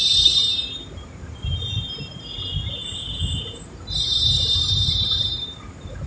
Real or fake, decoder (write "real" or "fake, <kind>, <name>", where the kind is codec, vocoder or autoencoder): fake, vocoder, BigVGAN v2